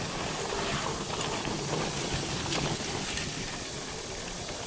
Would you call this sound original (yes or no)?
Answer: yes